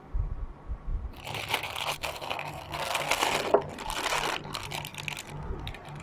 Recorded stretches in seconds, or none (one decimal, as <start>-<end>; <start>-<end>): 0.0-2.0; 3.2-6.0